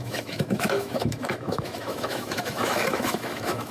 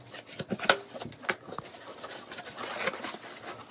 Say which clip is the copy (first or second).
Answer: first